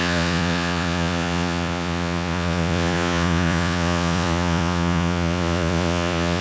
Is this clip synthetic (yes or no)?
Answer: yes